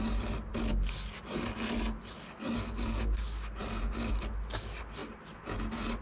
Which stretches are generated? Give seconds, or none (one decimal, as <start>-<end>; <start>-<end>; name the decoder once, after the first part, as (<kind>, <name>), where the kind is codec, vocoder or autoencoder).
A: none